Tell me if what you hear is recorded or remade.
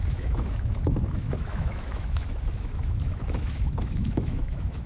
remade